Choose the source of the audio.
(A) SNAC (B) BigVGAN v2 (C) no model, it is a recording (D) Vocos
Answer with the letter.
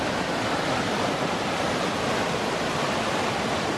C